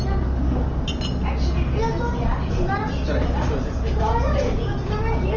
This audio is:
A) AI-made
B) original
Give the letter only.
B